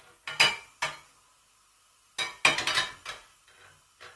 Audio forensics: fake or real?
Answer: real